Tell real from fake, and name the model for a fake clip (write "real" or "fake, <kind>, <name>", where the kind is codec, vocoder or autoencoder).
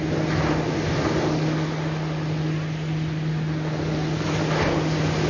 real